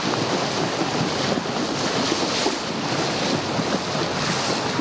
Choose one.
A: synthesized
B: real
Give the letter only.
B